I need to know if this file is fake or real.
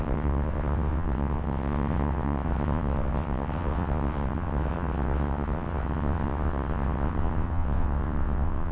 fake